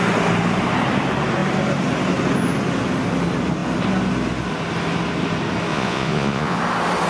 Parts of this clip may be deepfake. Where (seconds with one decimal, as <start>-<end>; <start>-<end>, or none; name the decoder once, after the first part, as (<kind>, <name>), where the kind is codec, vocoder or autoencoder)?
5.7-6.6 (vocoder, Vocos)